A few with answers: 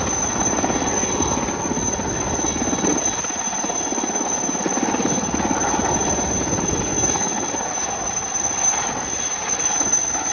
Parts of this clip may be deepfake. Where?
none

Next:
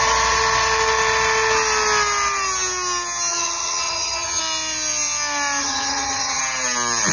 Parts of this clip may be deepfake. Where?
3.3-4.4 (vocoder, HiFi-GAN); 5.6-6.4

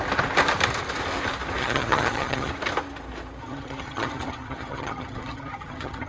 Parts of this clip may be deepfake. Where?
1.6-2.5 (vocoder, HiFi-GAN); 3.4-6.1

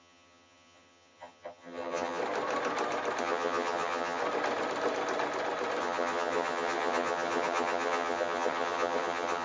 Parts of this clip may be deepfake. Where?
0.0-2.2 (vocoder, HiFi-GAN); 3.2-4.2; 5.8-9.4